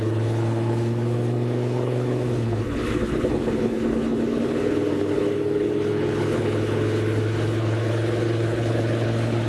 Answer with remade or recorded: remade